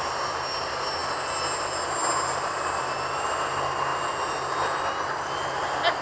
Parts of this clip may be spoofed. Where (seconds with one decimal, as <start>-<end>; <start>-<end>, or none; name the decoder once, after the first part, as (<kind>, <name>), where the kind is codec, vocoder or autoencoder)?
none